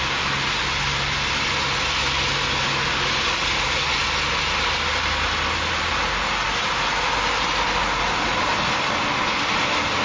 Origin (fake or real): real